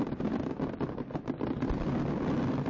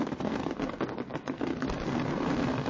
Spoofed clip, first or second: second